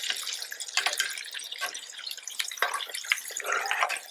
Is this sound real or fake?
fake